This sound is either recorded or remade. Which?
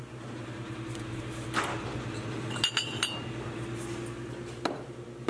recorded